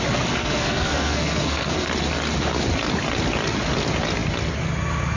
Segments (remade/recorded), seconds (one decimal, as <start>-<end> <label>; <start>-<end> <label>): 0.0-0.4 recorded; 0.4-1.9 remade; 1.9-5.2 recorded